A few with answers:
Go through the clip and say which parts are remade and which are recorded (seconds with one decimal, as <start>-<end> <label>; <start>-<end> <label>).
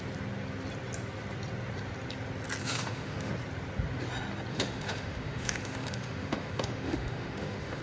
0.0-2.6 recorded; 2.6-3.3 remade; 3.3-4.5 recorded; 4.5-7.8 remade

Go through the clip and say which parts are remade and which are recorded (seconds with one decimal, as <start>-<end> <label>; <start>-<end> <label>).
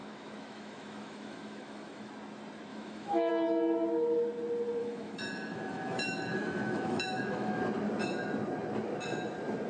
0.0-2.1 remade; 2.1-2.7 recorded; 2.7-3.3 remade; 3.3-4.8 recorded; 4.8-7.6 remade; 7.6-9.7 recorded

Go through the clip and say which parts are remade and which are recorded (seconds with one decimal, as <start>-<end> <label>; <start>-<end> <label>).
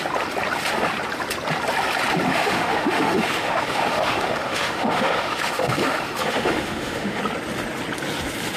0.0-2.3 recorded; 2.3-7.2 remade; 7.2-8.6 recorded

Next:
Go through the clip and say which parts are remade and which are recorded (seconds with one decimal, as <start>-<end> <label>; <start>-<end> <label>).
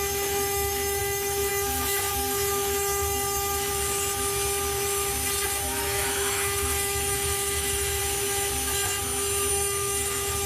0.0-3.7 remade; 3.7-5.7 recorded; 5.7-8.0 remade; 8.0-9.5 recorded; 9.5-10.5 remade